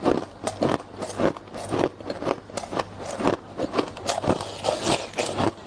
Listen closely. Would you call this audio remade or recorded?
recorded